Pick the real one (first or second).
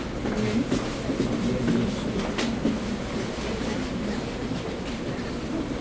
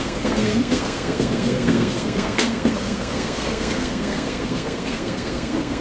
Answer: first